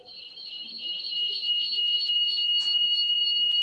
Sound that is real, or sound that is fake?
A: fake